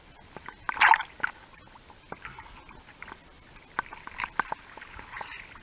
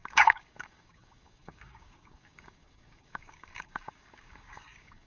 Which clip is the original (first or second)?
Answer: first